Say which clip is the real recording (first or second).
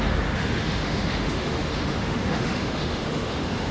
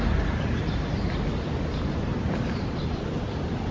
second